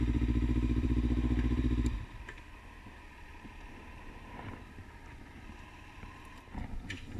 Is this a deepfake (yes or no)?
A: yes